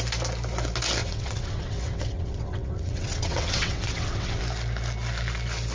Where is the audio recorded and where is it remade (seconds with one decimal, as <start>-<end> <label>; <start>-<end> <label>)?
0.0-1.0 recorded; 1.0-4.4 remade; 4.4-5.7 recorded